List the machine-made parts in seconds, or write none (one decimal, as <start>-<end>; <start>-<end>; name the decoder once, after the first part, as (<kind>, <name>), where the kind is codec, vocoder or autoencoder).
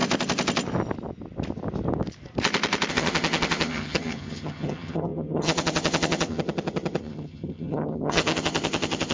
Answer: 2.9-9.1 (vocoder, HiFi-GAN)